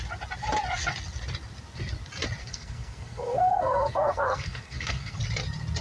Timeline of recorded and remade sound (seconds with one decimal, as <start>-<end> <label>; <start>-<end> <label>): 0.0-2.4 recorded; 2.4-5.2 remade; 5.2-5.8 recorded